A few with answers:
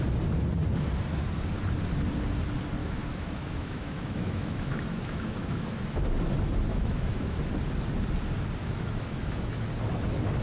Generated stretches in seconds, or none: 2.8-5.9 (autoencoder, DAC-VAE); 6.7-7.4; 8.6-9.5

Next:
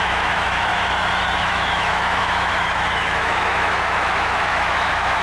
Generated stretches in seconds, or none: 0.0-0.7 (autoencoder, DAC-VAE); 1.4-5.2

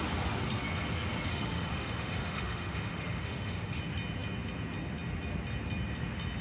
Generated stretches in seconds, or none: 1.3-3.8 (autoencoder, DAC-VAE)

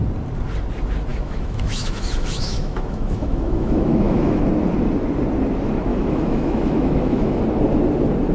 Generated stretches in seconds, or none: 1.1-4.4 (autoencoder, DAC-VAE); 5.9-7.4

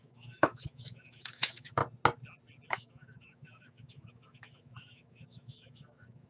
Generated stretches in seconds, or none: 0.0-1.8 (autoencoder, DAC-VAE); 2.7-6.3